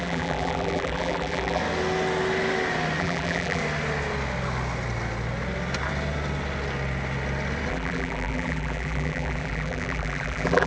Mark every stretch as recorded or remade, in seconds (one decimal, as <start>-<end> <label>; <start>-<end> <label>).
0.0-1.6 remade; 1.6-3.0 recorded; 3.0-3.6 remade; 3.6-7.7 recorded; 7.7-10.7 remade

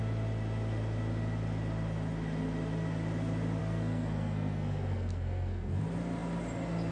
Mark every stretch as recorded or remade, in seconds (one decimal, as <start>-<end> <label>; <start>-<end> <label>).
0.0-3.6 recorded; 3.6-5.8 remade; 5.8-6.9 recorded

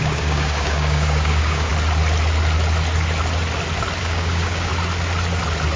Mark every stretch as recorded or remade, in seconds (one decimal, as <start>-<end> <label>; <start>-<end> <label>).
0.0-1.7 remade; 1.7-4.0 recorded; 4.0-4.7 remade; 4.7-5.8 recorded

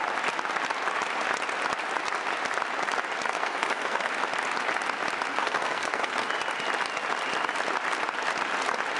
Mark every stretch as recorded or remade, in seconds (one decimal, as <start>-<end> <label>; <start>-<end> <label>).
0.0-3.3 recorded; 3.3-4.1 remade; 4.1-5.3 recorded; 5.3-6.3 remade; 6.3-9.0 recorded

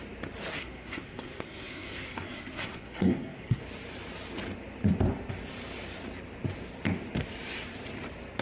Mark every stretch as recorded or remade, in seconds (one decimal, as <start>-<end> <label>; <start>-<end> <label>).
0.0-0.6 recorded; 0.6-3.6 remade; 3.6-8.4 recorded

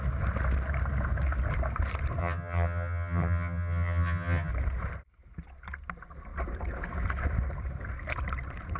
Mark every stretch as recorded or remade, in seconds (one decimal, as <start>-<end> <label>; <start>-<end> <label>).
0.0-2.2 recorded; 2.2-4.5 remade; 4.5-8.8 recorded